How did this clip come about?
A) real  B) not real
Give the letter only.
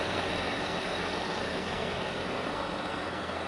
B